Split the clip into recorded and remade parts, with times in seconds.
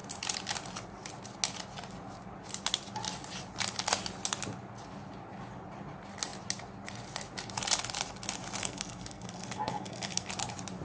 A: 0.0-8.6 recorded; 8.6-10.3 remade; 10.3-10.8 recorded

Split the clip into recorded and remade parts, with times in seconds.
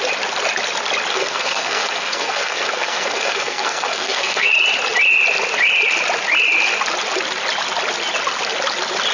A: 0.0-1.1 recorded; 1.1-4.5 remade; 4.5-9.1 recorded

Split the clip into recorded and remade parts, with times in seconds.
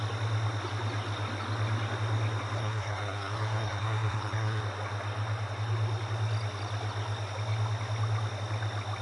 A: 0.0-2.6 recorded; 2.6-4.6 remade; 4.6-9.0 recorded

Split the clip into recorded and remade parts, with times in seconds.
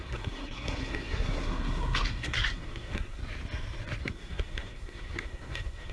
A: 0.0-3.2 remade; 3.2-4.0 recorded; 4.0-5.9 remade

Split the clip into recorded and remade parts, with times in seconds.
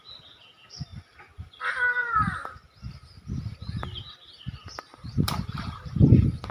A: 0.0-6.5 recorded